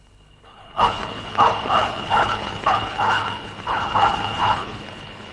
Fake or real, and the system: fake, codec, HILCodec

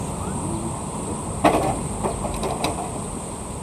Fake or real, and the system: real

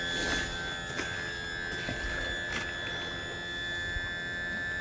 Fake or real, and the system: real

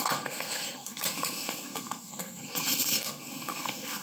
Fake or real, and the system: fake, codec, SNAC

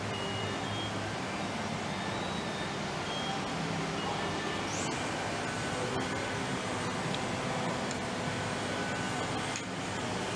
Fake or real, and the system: real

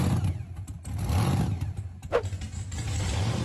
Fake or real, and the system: real